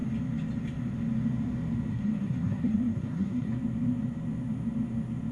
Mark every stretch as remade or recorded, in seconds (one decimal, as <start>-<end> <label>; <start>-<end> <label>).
0.0-1.9 recorded; 1.9-3.5 remade; 3.5-5.3 recorded